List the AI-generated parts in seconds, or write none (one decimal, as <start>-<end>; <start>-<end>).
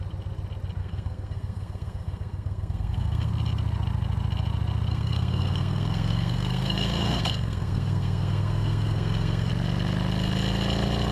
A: 0.8-3.3; 4.9-9.5